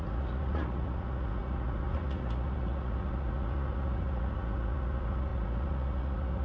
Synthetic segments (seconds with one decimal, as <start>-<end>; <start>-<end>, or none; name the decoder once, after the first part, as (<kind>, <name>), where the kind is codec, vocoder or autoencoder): 0.0-6.4 (vocoder, Vocos)